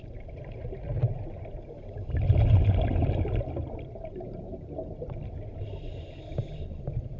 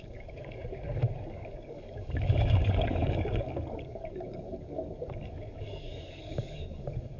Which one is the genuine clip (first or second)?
first